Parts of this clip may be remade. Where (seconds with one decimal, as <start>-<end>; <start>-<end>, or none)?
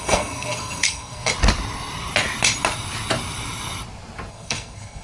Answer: 0.0-1.3; 4.3-5.0